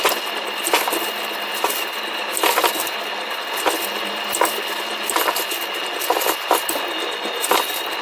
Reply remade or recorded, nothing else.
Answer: recorded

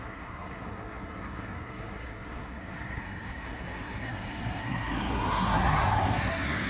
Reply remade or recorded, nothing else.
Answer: remade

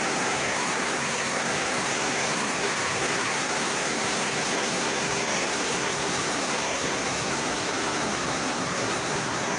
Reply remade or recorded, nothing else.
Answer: remade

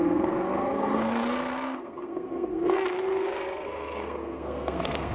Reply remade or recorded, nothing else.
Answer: remade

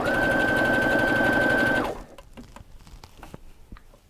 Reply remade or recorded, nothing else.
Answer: recorded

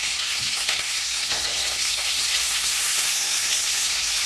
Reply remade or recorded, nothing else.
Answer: remade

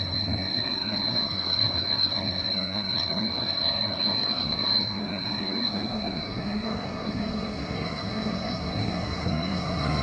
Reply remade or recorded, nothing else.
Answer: remade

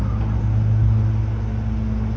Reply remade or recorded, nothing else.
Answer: recorded